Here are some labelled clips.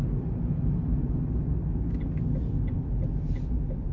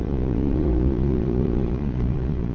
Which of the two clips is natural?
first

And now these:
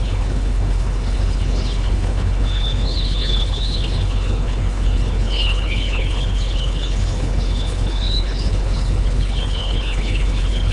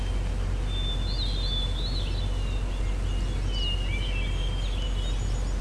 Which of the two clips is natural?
second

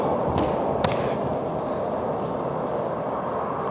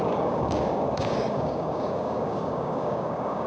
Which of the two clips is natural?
first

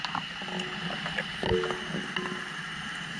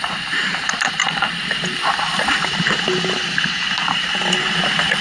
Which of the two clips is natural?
first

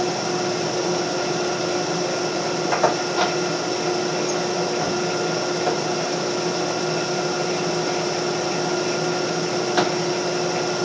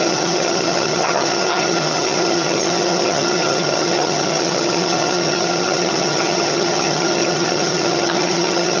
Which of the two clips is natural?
first